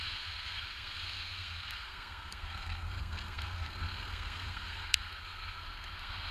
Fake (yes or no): yes